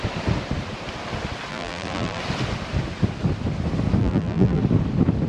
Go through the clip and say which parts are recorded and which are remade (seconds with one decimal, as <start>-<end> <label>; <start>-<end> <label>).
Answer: 0.0-1.5 recorded; 1.5-2.2 remade; 2.2-4.0 recorded; 4.0-4.6 remade; 4.6-5.3 recorded